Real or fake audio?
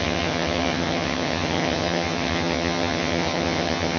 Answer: fake